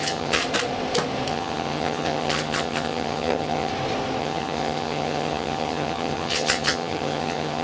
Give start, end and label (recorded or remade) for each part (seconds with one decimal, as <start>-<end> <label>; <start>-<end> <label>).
0.0-0.4 remade; 0.4-1.3 recorded; 1.3-3.7 remade; 3.7-4.2 recorded; 4.2-7.6 remade